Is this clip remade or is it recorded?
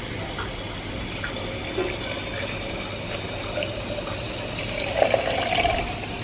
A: recorded